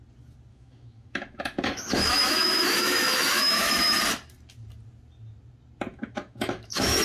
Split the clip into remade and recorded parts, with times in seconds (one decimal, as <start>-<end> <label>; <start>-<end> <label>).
0.0-0.5 recorded; 0.5-4.0 remade; 4.0-5.9 recorded; 5.9-7.0 remade